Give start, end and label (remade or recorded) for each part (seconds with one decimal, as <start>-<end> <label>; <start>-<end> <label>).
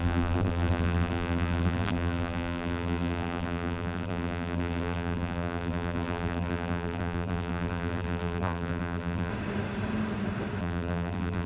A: 0.0-9.3 remade; 9.3-10.6 recorded; 10.6-11.5 remade